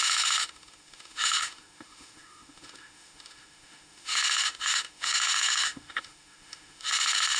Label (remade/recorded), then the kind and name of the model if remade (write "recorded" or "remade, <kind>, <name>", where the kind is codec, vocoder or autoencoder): remade, autoencoder, DAC-VAE